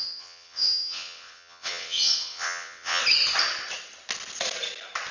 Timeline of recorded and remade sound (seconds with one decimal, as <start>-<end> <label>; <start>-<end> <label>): 0.0-3.0 remade; 3.0-5.1 recorded